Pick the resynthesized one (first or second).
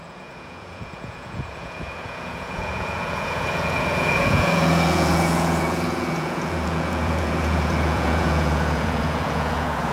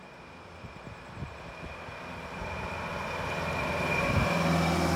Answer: first